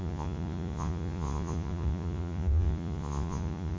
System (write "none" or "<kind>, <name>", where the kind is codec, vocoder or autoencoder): vocoder, Vocos